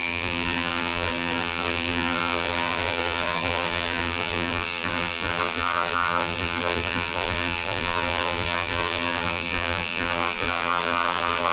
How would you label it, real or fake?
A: fake